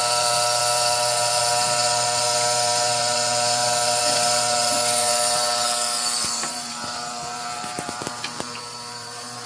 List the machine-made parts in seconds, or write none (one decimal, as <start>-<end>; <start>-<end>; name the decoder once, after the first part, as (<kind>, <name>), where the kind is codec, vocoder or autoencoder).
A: 0.0-9.5 (vocoder, BigVGAN v2)